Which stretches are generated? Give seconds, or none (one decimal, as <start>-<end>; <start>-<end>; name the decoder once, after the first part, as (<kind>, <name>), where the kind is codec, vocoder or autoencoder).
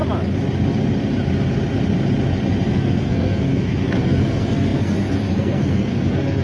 2.7-6.4 (codec, SNAC)